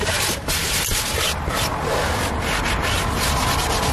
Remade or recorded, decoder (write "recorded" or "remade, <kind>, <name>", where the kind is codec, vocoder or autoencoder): recorded